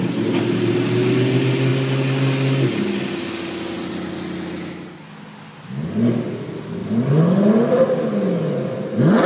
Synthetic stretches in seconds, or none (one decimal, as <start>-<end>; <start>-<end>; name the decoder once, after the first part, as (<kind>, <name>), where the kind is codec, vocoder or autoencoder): none